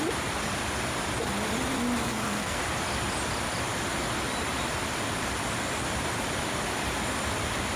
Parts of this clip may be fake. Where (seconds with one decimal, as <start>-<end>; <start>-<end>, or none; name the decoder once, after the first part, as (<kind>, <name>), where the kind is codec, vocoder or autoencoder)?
2.0-2.6 (codec, SNAC)